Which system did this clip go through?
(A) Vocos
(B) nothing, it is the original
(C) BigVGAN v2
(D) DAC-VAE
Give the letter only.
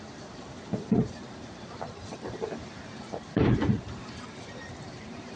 C